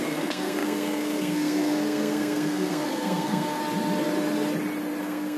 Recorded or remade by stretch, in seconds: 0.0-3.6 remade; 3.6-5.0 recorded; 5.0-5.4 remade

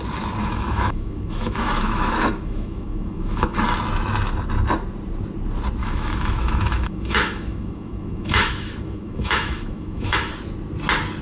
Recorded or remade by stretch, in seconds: 0.0-0.4 recorded; 0.4-3.6 remade; 3.6-5.8 recorded; 5.8-10.3 remade; 10.3-11.2 recorded

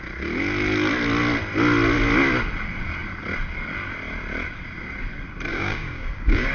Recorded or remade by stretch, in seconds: 0.0-5.5 recorded; 5.5-6.5 remade

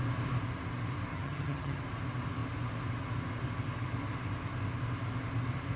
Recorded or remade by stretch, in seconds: 0.0-1.1 recorded; 1.1-1.8 remade; 1.8-5.8 recorded

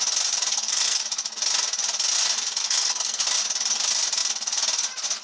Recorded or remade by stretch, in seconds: 0.0-0.5 recorded; 0.5-1.0 remade; 1.0-2.6 recorded; 2.6-3.2 remade; 3.2-5.2 recorded

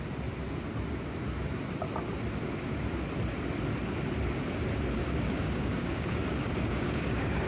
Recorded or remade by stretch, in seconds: 0.0-5.0 recorded; 5.0-7.5 remade